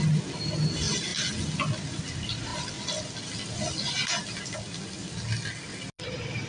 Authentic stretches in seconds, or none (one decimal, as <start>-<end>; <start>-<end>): 0.0-6.5